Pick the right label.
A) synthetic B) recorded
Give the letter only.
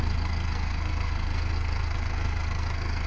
A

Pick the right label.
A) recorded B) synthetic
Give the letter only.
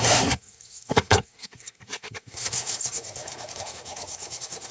B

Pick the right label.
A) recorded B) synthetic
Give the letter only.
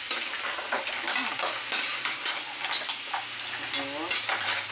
A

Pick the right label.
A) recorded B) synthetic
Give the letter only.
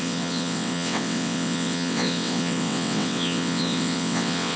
B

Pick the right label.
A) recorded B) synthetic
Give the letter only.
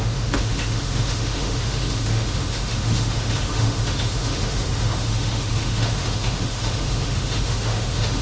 B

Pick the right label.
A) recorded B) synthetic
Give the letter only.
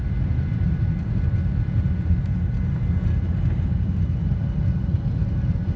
A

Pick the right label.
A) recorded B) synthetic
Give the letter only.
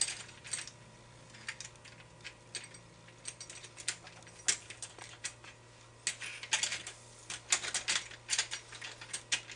A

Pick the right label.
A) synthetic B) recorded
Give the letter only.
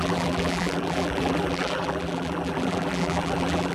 A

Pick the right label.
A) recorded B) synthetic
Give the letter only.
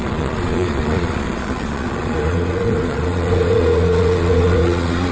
B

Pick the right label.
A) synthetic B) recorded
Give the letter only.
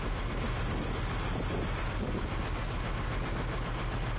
B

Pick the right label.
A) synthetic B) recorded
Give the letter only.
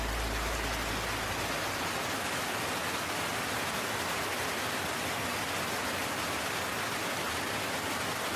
B